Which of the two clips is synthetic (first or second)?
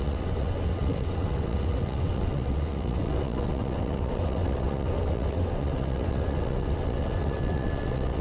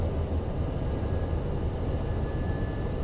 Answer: first